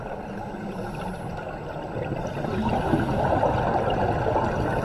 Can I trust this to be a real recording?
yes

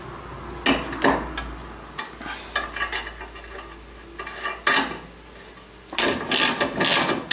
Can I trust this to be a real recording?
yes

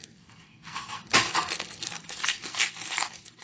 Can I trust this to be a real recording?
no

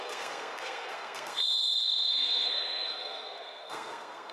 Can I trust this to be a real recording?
no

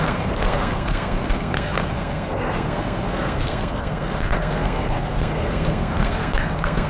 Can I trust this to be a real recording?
no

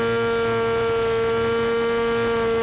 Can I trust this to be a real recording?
yes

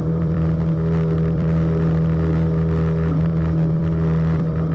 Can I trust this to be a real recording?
no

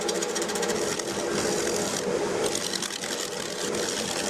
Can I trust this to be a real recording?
yes